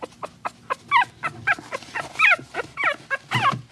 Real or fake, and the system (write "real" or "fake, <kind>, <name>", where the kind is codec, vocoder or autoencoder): real